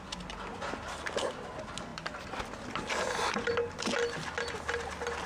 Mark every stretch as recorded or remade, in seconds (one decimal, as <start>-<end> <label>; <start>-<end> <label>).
0.0-5.3 recorded